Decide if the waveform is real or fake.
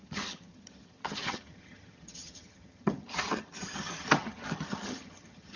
fake